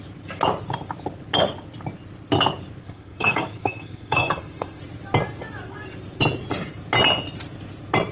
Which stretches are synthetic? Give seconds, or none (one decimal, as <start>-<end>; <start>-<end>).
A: 2.8-4.8

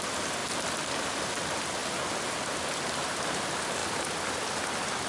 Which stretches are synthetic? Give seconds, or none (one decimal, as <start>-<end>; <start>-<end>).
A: 1.8-2.3; 3.8-4.6

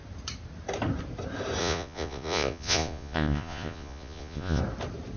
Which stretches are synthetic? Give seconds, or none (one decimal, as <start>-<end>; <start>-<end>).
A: 1.6-4.6

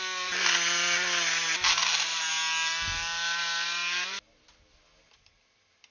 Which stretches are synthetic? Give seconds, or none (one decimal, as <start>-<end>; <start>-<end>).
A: 1.8-2.3

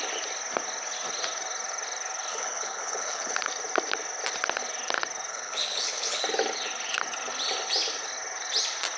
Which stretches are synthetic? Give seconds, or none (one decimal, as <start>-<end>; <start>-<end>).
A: 2.3-3.5; 5.3-6.2

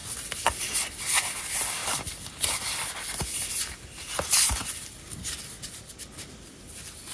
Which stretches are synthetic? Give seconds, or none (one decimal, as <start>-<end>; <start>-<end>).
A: none

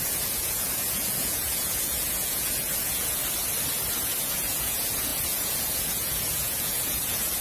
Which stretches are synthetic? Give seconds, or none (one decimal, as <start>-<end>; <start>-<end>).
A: 0.0-3.2; 4.2-7.4